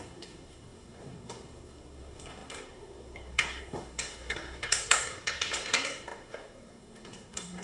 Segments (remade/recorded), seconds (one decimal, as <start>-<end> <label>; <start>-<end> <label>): 0.0-7.6 remade